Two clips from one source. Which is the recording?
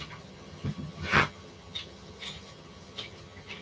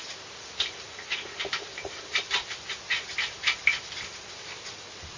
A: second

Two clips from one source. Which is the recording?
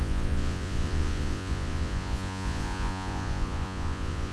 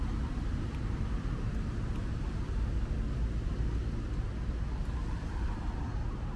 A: second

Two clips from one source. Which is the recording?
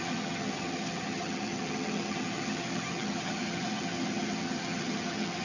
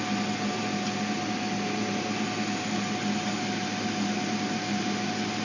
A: second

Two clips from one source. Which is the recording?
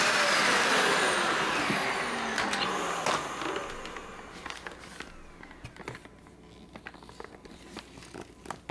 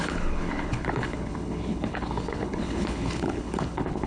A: first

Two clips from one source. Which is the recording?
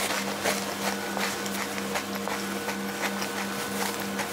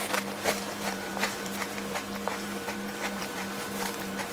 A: first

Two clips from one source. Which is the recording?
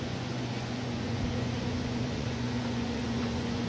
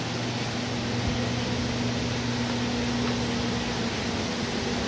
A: second